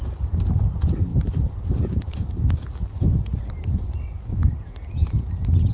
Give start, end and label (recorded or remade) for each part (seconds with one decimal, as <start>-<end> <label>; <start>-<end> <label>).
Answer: 0.0-5.7 recorded